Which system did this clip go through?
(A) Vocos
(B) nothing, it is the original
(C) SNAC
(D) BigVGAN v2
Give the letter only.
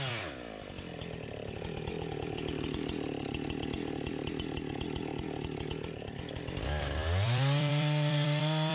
D